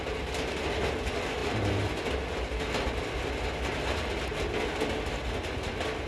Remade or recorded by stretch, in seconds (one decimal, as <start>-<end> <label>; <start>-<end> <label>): 0.0-6.1 recorded